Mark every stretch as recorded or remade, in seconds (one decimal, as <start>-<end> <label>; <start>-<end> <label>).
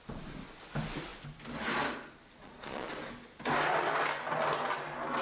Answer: 0.0-2.4 recorded; 2.4-2.9 remade; 2.9-5.2 recorded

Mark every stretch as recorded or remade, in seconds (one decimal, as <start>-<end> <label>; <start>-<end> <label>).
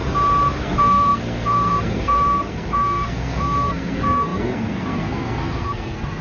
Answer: 0.0-0.6 recorded; 0.6-6.2 remade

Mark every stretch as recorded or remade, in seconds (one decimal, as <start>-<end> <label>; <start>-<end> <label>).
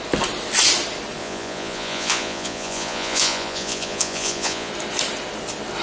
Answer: 0.0-1.2 recorded; 1.2-4.7 remade; 4.7-5.8 recorded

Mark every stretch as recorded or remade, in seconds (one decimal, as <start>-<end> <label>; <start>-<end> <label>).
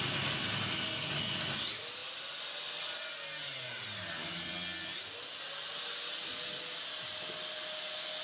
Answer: 0.0-8.2 recorded